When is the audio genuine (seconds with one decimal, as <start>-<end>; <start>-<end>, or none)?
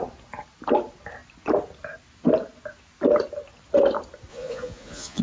0.0-4.3